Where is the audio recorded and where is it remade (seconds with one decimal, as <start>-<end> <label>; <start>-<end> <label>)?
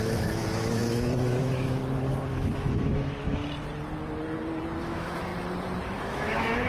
0.0-1.8 remade; 1.8-2.3 recorded; 2.3-3.4 remade; 3.4-4.8 recorded; 4.8-5.3 remade; 5.3-6.0 recorded; 6.0-6.7 remade